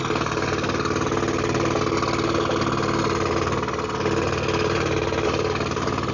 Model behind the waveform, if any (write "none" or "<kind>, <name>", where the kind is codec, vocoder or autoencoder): none